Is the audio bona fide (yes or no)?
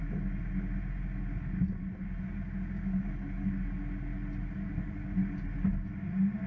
yes